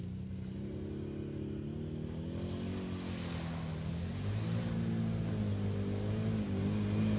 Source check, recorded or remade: recorded